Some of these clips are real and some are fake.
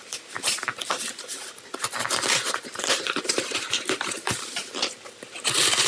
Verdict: fake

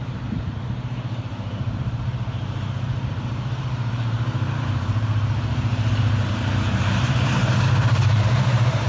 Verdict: fake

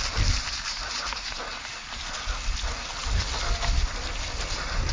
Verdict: real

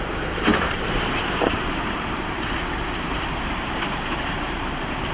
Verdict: fake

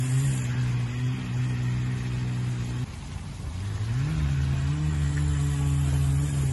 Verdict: real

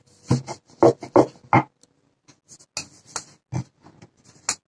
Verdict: real